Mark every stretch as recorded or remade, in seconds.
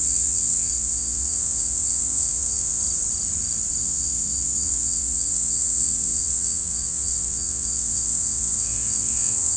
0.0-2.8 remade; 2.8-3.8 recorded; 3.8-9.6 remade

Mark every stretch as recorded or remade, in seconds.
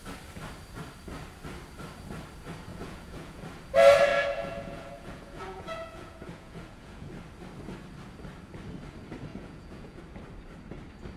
0.0-2.7 recorded; 2.7-3.4 remade; 3.4-4.1 recorded; 4.1-7.1 remade; 7.1-9.3 recorded; 9.3-10.0 remade; 10.0-11.2 recorded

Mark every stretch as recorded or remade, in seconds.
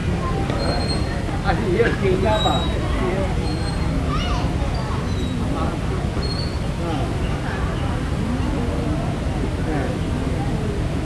0.0-11.0 recorded